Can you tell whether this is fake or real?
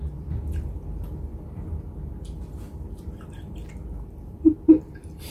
fake